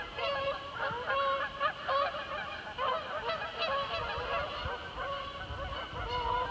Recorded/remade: recorded